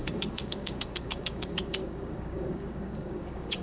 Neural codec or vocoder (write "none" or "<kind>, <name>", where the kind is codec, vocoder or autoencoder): codec, DAC